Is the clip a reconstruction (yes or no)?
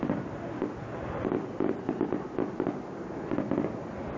no